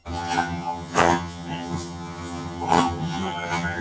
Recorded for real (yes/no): no